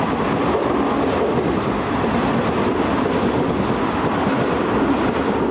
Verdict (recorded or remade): recorded